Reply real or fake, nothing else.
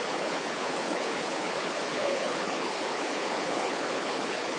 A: fake